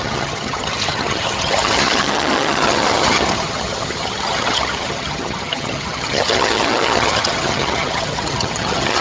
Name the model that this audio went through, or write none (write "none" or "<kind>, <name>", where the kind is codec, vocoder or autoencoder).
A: vocoder, HiFi-GAN